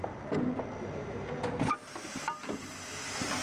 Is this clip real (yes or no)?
yes